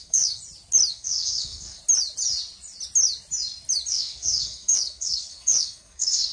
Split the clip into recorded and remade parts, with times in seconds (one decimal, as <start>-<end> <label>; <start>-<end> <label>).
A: 0.0-0.4 remade; 0.4-0.9 recorded; 0.9-1.8 remade; 1.8-3.9 recorded; 3.9-6.3 remade